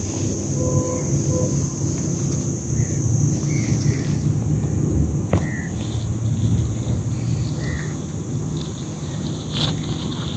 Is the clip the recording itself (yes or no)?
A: yes